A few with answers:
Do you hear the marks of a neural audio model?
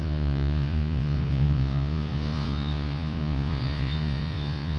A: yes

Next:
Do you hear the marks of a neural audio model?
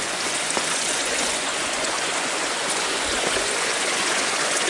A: yes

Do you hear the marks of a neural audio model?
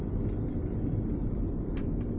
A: no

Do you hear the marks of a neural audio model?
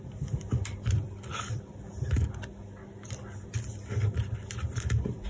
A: no